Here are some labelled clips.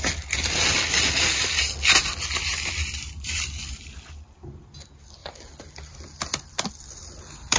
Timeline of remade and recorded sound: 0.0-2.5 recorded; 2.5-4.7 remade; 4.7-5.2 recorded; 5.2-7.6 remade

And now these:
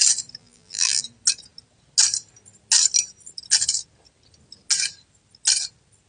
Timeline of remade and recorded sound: 0.0-0.4 recorded; 0.4-1.0 remade; 1.0-6.1 recorded

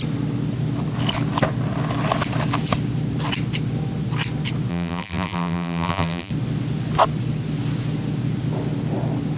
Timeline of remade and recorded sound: 0.0-4.7 recorded; 4.7-6.3 remade; 6.3-9.4 recorded

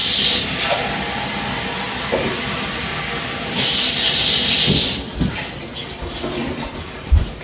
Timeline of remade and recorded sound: 0.0-2.5 recorded; 2.5-2.9 remade; 2.9-5.3 recorded; 5.3-5.8 remade; 5.8-6.5 recorded; 6.5-7.4 remade